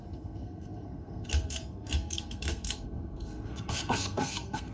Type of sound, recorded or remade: remade